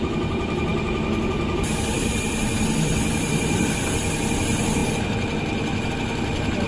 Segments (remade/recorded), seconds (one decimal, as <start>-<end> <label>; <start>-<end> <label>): 0.0-0.7 recorded; 0.7-4.3 remade; 4.3-6.7 recorded